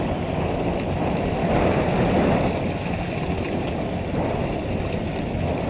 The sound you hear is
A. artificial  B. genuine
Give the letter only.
B